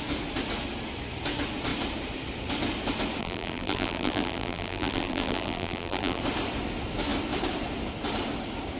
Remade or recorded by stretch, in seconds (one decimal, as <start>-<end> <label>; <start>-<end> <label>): 0.0-3.2 recorded; 3.2-6.2 remade; 6.2-8.8 recorded